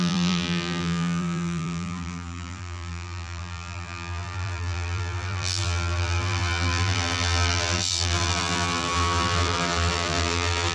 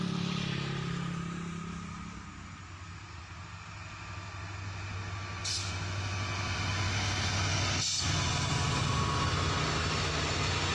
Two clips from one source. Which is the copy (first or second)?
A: first